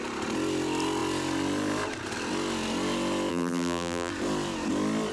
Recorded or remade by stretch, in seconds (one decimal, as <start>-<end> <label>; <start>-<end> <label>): 0.0-3.3 recorded; 3.3-4.1 remade; 4.1-5.1 recorded